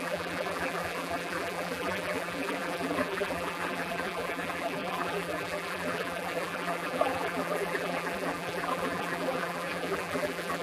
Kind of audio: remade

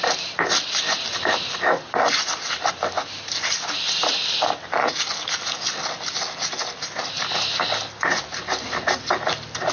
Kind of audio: recorded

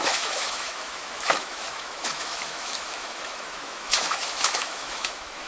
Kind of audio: remade